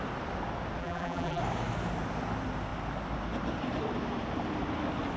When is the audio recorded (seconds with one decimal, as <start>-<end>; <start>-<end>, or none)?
0.0-0.8; 1.4-5.2